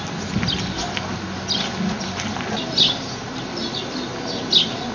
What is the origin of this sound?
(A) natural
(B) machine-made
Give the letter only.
A